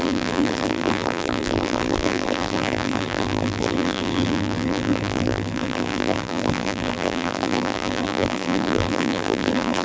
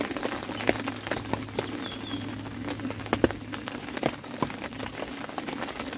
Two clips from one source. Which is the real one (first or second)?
second